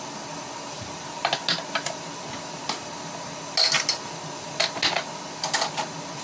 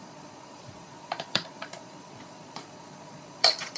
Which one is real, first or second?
first